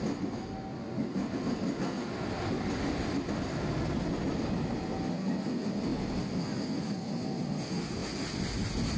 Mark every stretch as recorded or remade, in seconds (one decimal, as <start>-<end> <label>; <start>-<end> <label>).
0.0-9.0 recorded